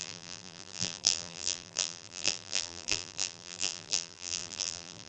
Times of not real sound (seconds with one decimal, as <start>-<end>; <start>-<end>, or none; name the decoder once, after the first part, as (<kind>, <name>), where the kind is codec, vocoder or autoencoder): 0.0-5.1 (vocoder, BigVGAN v2)